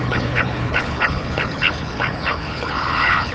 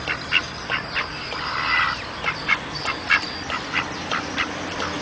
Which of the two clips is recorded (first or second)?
second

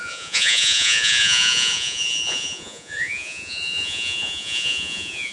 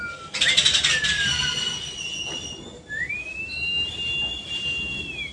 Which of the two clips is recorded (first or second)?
second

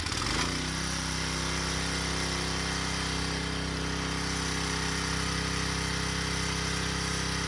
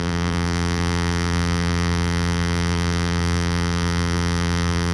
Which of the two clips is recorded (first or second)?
first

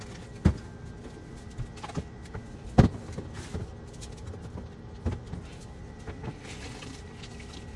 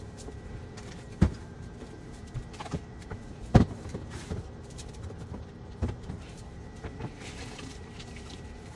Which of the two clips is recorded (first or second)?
first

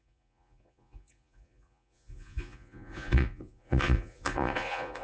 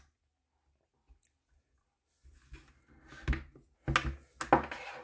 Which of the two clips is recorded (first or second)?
second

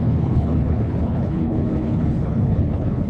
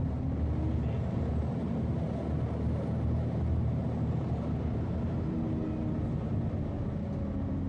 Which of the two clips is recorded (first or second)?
second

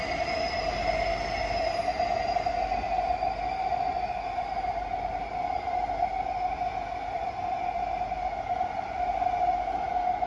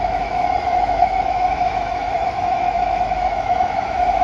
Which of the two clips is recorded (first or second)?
first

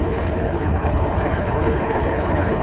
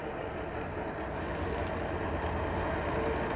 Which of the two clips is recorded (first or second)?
second